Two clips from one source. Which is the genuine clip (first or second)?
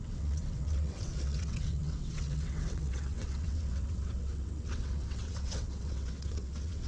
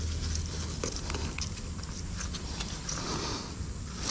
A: second